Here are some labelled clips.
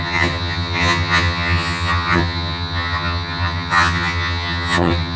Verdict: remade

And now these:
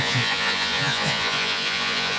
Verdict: remade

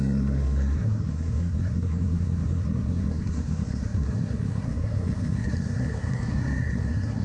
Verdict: remade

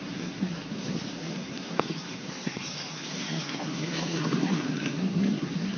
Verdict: remade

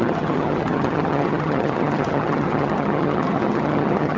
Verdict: remade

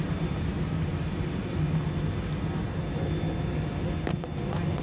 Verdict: recorded